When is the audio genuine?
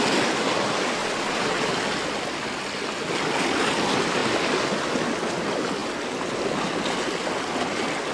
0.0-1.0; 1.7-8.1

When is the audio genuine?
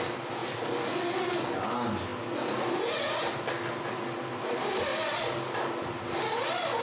0.0-6.8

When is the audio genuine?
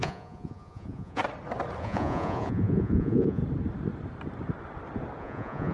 1.2-1.8; 3.4-5.2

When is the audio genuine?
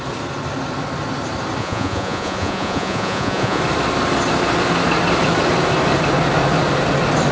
0.0-1.6; 3.6-7.3